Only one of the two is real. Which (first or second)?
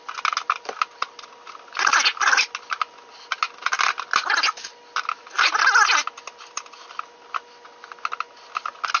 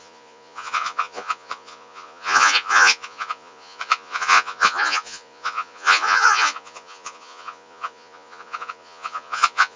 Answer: first